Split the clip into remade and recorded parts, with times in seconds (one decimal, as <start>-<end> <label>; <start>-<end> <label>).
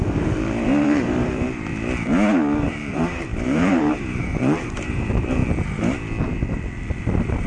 0.0-1.7 remade; 1.7-2.7 recorded; 2.7-5.4 remade; 5.4-7.0 recorded; 7.0-7.5 remade